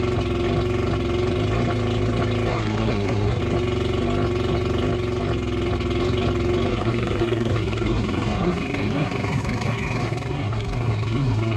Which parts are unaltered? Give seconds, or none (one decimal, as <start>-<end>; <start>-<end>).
0.0-2.5; 3.4-6.7